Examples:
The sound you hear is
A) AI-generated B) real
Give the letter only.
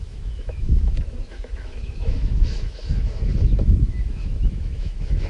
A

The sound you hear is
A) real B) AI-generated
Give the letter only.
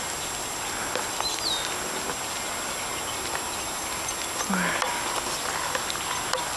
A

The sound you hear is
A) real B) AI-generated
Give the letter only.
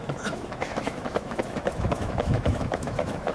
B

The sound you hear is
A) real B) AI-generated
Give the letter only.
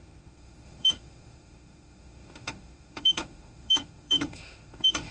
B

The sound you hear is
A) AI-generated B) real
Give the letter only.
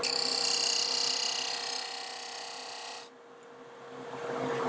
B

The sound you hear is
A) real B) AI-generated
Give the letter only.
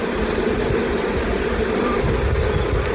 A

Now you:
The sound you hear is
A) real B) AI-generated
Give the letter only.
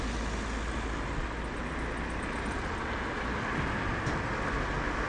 A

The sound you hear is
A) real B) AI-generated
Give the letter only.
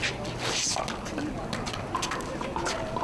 A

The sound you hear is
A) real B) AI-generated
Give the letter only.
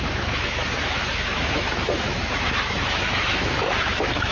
B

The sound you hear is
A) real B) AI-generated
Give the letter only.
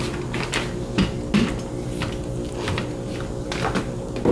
A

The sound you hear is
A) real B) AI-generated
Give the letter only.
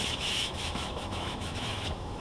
B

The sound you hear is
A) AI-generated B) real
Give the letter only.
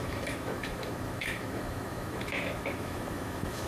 A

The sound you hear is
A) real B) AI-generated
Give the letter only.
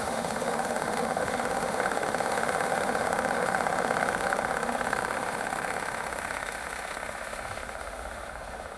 B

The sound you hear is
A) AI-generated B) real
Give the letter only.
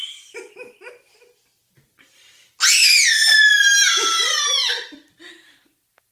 B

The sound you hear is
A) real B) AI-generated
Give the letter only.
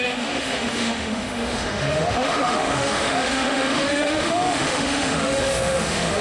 B